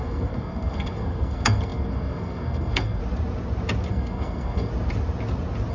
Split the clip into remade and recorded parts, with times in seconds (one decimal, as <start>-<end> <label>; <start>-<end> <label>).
0.0-3.0 remade; 3.0-3.9 recorded; 3.9-4.7 remade; 4.7-5.7 recorded